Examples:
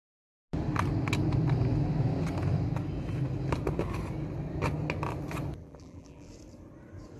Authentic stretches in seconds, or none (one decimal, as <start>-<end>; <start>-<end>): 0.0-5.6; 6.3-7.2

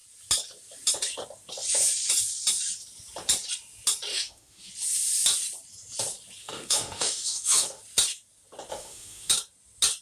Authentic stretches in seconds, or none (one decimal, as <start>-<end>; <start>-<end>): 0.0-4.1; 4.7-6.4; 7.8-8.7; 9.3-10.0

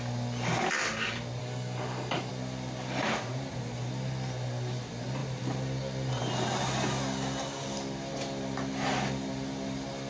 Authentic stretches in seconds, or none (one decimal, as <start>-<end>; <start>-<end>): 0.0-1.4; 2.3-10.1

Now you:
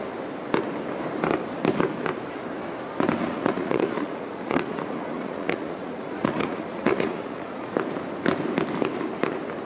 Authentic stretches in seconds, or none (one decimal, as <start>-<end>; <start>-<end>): 0.0-3.2; 7.7-9.7